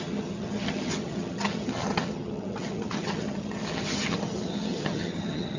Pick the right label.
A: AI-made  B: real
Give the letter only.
A